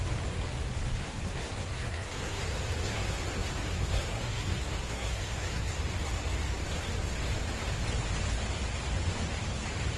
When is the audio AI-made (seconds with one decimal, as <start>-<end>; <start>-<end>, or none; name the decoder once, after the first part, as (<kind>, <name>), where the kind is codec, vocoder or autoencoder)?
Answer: 1.0-2.4 (codec, SNAC); 2.8-5.8